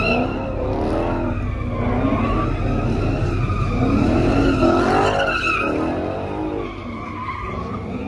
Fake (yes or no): no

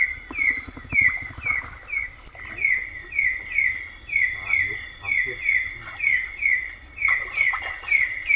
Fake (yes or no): no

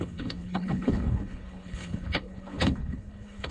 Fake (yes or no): yes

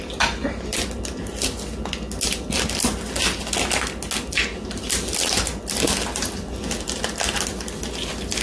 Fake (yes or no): no